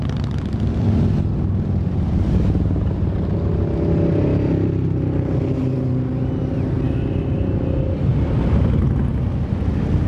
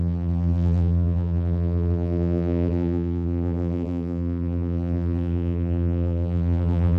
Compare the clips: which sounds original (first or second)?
first